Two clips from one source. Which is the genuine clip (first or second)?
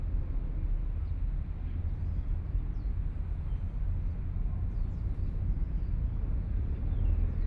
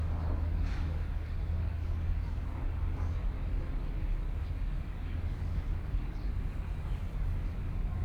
first